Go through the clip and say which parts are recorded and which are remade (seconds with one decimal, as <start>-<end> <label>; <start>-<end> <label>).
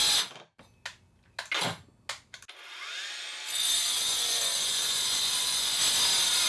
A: 0.0-3.8 recorded; 3.8-5.8 remade; 5.8-6.5 recorded